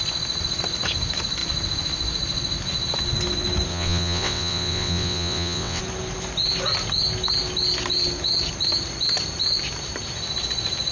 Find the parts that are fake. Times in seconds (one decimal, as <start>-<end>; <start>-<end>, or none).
3.7-5.8